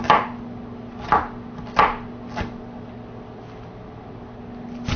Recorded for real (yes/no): yes